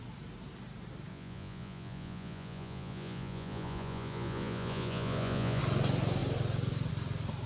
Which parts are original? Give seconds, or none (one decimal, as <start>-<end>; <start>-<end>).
0.0-1.1; 5.6-7.5